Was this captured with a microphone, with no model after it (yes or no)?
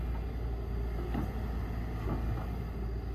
yes